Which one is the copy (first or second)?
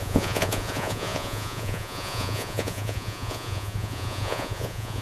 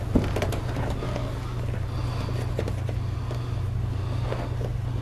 first